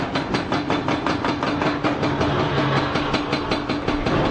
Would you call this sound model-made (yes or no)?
no